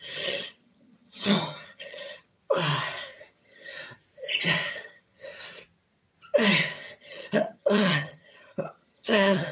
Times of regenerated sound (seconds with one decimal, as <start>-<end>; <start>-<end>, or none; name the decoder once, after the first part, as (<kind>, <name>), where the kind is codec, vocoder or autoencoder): 0.0-2.4 (vocoder, HiFi-GAN); 3.3-3.7; 4.7-5.3; 7.0-9.5